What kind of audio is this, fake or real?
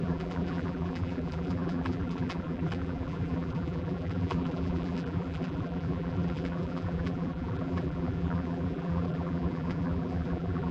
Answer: fake